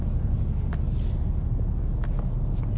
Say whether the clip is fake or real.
real